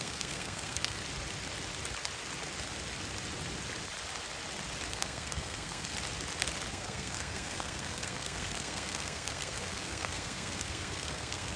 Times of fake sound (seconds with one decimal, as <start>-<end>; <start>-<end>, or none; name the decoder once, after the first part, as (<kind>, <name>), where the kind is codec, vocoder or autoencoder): 0.0-1.0 (codec, SNAC); 4.9-5.9; 6.7-11.6